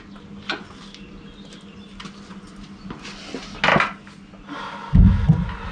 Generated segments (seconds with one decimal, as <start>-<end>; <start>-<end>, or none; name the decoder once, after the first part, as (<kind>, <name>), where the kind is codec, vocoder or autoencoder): none